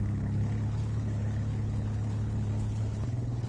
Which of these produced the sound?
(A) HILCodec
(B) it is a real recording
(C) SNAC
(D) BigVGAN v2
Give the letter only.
A